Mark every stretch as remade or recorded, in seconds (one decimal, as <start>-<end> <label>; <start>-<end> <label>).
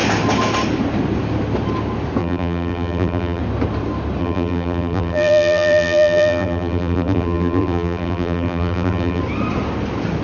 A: 0.0-2.2 recorded; 2.2-3.4 remade; 3.4-4.2 recorded; 4.2-9.2 remade; 9.2-10.2 recorded